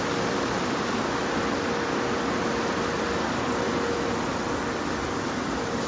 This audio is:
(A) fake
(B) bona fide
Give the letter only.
B